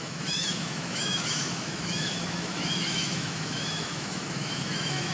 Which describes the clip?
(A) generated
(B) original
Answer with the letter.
A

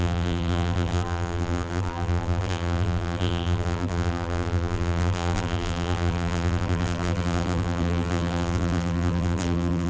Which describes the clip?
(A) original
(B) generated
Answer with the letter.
B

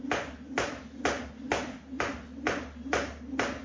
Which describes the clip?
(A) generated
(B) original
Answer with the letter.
B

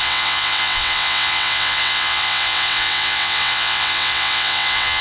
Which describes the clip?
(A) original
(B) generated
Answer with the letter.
B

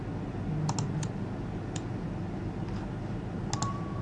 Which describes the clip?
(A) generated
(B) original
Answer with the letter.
B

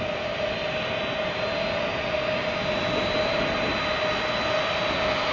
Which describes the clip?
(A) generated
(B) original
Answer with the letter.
B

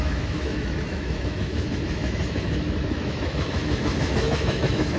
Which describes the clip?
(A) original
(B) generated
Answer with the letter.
B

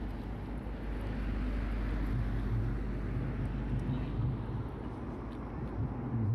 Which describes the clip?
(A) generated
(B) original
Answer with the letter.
B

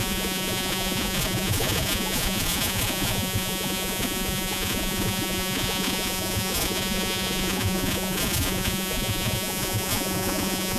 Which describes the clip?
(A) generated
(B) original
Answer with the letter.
A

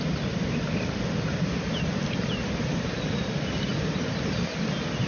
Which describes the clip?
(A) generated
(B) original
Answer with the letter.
B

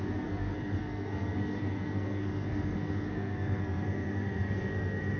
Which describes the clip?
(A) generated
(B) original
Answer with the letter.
A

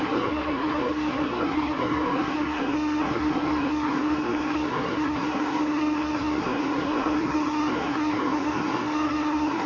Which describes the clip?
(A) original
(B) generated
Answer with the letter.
B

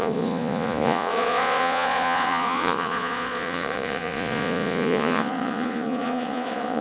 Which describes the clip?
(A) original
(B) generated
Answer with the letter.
B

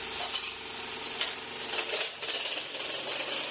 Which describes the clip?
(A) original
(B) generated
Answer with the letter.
A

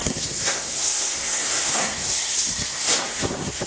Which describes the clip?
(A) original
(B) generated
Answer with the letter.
B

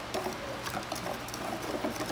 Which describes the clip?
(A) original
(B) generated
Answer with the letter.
A